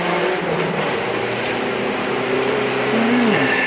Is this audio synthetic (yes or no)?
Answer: yes